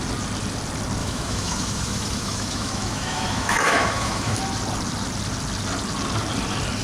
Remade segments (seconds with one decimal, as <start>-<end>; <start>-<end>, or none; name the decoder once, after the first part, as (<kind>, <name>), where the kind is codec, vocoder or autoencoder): 1.0-4.4 (autoencoder, DAC-VAE)